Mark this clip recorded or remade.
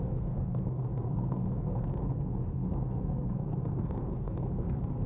remade